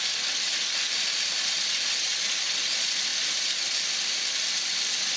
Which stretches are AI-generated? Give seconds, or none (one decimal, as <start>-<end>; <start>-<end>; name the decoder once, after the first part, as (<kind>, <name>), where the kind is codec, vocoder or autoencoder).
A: none